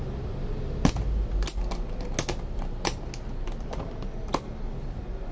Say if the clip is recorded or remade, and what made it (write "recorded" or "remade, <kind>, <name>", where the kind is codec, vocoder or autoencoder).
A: recorded